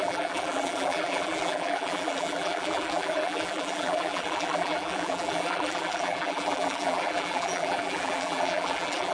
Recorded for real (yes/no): no